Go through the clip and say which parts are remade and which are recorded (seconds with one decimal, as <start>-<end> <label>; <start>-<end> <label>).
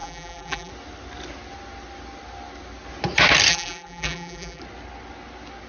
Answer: 0.0-0.7 remade; 0.7-3.5 recorded; 3.5-4.6 remade; 4.6-5.7 recorded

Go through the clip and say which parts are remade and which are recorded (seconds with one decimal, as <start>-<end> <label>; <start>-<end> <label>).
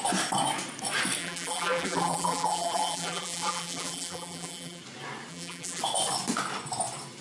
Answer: 0.0-1.2 recorded; 1.2-4.8 remade; 4.8-5.3 recorded; 5.3-5.8 remade; 5.8-7.2 recorded